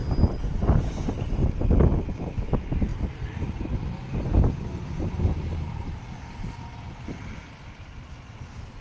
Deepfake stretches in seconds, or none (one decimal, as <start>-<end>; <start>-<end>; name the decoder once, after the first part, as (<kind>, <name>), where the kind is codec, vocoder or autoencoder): none